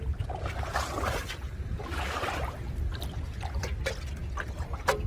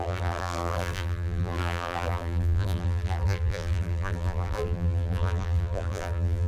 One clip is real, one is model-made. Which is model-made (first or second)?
second